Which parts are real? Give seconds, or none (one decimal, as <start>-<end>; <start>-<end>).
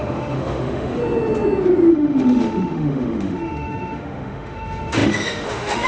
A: 1.0-1.9